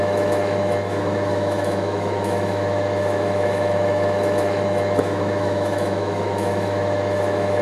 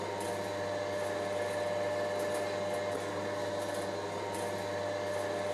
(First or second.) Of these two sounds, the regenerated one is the first